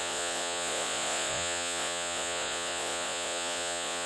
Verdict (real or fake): fake